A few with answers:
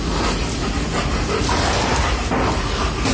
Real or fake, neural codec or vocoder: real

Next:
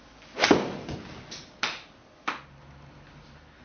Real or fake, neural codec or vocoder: real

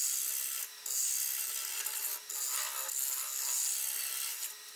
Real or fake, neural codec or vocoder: real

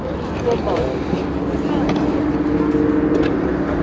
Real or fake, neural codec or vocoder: real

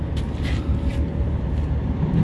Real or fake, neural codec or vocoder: real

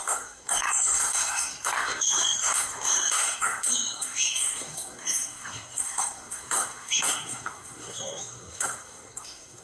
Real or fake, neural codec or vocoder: fake, codec, SNAC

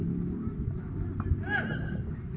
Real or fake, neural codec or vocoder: real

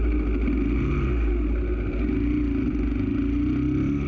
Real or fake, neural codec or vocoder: real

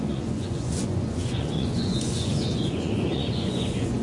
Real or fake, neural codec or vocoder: fake, vocoder, Vocos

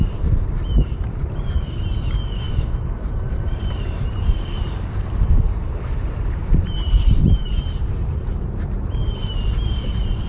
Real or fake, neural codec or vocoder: fake, vocoder, BigVGAN v2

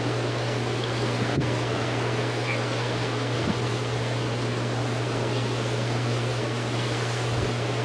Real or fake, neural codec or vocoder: fake, codec, SNAC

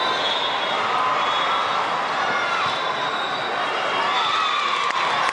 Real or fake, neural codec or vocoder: real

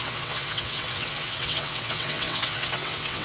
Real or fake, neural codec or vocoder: fake, vocoder, WaveNeXt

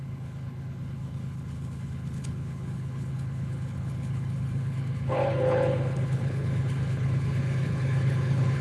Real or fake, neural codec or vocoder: fake, codec, HILCodec